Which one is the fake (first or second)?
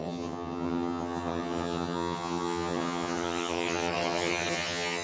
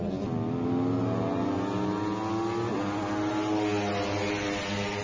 first